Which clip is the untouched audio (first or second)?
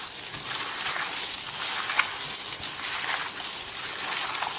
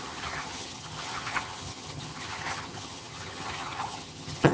first